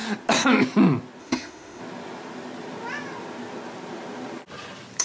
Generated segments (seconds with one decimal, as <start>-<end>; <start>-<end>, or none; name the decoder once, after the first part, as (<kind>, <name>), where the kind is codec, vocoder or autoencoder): 1.2-1.8 (autoencoder, DAC-VAE)